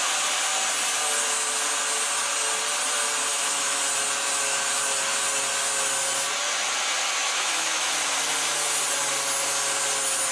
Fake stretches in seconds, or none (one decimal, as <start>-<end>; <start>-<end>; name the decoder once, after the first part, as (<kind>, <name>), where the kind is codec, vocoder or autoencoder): 3.3-3.8 (autoencoder, DAC-VAE); 7.2-7.9